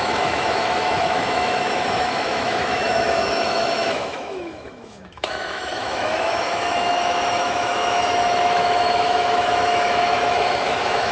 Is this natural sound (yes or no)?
no